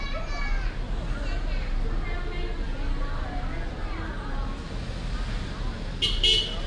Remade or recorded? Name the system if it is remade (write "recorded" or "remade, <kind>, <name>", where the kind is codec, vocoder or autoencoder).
recorded